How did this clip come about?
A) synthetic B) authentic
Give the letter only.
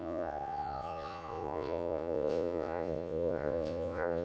A